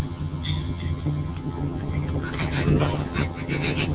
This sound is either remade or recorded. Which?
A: remade